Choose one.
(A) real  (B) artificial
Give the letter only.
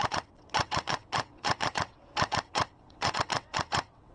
B